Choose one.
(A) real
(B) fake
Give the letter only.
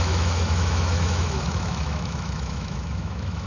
B